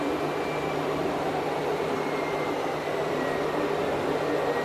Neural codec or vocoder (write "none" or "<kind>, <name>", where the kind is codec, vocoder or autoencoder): vocoder, BigVGAN v2